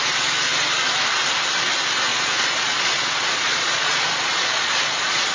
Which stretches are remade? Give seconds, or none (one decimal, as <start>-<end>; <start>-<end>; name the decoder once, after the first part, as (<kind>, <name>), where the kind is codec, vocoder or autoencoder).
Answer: 2.1-5.3 (vocoder, Vocos)

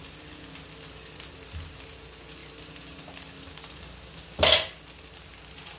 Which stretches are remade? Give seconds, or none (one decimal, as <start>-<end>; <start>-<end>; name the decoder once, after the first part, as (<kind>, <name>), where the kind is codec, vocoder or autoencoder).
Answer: none

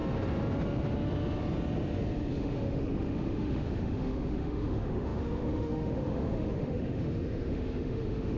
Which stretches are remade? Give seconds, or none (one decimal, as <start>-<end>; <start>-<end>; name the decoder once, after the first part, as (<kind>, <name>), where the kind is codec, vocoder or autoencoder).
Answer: 2.4-8.4 (autoencoder, DAC-VAE)